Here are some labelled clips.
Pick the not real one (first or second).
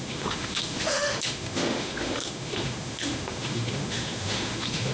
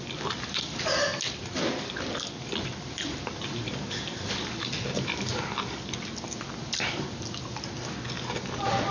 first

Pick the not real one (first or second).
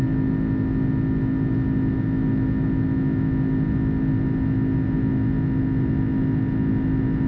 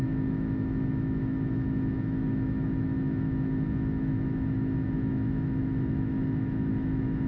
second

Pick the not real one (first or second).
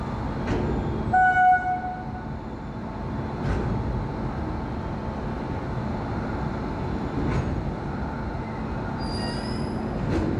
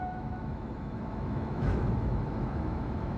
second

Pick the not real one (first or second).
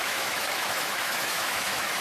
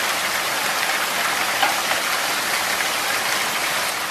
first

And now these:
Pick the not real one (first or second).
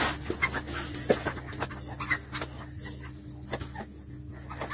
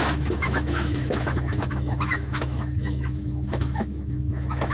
second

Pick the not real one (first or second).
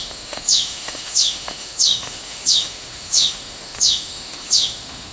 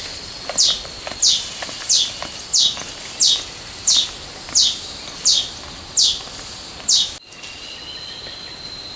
first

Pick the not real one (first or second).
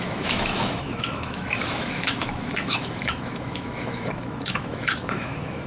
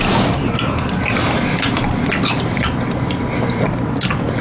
first